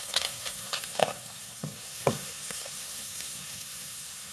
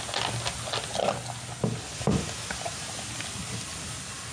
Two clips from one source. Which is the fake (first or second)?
first